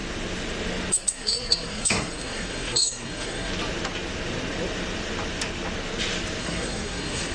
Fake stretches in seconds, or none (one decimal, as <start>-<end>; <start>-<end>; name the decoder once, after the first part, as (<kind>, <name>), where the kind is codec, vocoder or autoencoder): 0.9-3.5 (codec, SNAC); 6.4-7.3